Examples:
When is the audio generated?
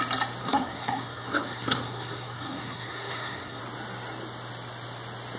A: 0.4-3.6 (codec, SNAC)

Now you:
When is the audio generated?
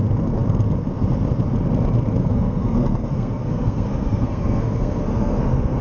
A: 2.2-5.8 (codec, SNAC)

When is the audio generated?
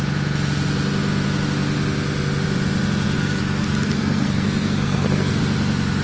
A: 3.2-5.4 (codec, SNAC)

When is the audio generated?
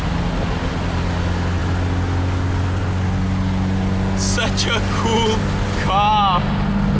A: none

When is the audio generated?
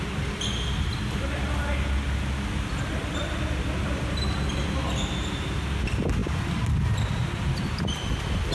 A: none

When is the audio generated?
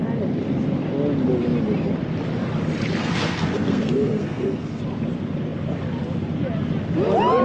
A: 3.0-4.8 (codec, SNAC)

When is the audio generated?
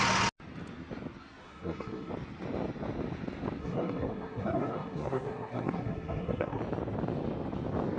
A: 1.4-2.1 (codec, SNAC); 3.6-6.6